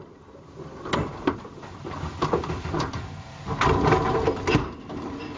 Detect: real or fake real